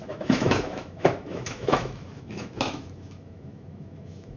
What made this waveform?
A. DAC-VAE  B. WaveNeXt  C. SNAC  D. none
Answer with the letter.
A